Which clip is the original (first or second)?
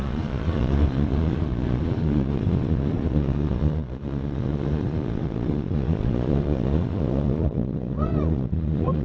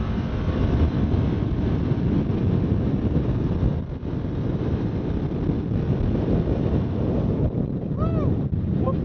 second